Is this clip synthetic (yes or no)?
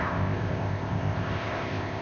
yes